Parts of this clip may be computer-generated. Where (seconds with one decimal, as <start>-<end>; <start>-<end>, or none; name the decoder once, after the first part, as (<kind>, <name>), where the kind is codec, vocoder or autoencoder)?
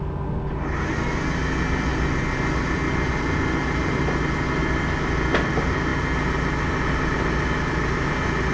none